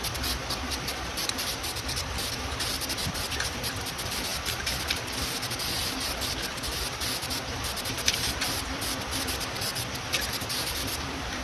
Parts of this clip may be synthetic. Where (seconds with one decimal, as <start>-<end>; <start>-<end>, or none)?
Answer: 0.0-9.7; 10.3-11.4